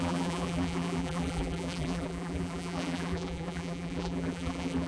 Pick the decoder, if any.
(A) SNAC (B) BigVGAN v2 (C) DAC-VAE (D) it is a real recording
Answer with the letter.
B